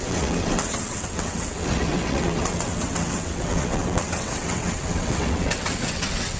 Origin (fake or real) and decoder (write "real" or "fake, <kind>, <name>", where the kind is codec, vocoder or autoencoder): fake, vocoder, WaveNeXt